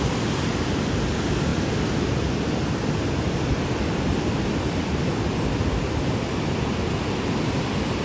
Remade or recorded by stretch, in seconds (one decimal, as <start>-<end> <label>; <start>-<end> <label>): 0.0-1.5 recorded; 1.5-6.0 remade; 6.0-8.0 recorded